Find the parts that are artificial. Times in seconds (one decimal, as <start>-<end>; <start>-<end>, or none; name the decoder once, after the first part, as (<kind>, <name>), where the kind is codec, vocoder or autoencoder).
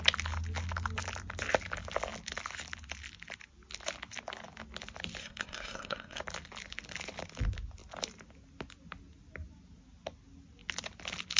5.2-6.2 (codec, SNAC)